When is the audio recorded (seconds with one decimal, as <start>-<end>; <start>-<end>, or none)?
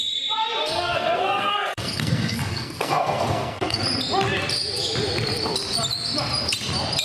0.0-0.6; 3.8-7.0